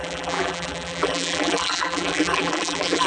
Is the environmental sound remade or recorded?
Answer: remade